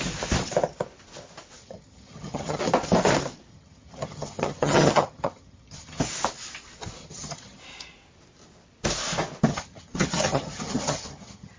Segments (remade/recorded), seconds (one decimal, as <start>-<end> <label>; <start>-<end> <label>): 0.0-1.6 recorded; 1.6-2.6 remade; 2.6-3.5 recorded; 3.5-6.0 remade; 6.0-7.0 recorded; 7.0-7.6 remade; 7.6-9.5 recorded; 9.5-11.6 remade